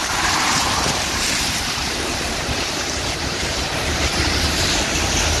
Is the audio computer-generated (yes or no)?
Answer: yes